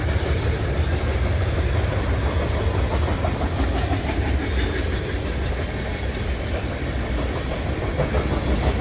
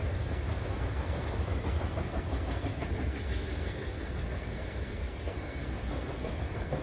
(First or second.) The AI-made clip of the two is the second